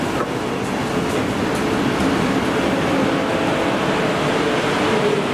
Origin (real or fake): real